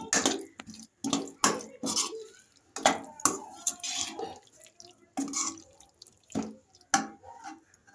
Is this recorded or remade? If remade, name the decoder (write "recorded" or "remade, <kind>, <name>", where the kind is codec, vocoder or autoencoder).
recorded